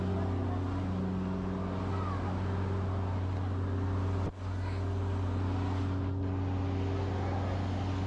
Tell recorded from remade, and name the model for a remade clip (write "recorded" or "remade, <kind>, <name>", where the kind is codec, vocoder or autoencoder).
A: recorded